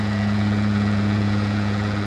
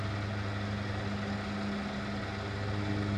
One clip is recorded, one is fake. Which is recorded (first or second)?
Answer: second